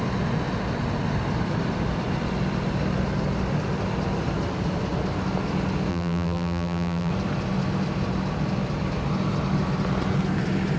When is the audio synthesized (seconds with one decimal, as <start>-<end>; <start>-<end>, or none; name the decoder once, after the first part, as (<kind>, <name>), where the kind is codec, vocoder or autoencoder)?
5.9-7.1 (vocoder, BigVGAN v2)